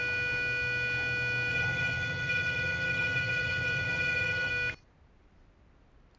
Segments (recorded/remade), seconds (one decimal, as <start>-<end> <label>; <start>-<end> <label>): 0.0-1.5 recorded; 1.5-4.5 remade; 4.5-6.2 recorded